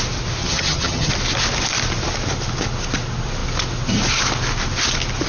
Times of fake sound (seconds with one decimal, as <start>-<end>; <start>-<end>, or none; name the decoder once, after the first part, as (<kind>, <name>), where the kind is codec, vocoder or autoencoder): 0.4-1.1 (vocoder, HiFi-GAN)